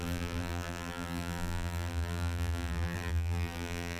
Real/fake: fake